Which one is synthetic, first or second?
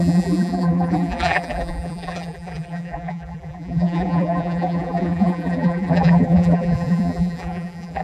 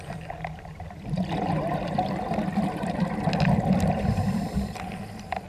first